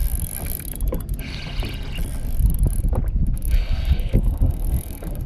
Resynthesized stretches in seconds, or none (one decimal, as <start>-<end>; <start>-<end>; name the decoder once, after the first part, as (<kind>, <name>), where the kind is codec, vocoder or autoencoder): 3.2-5.3 (codec, SNAC)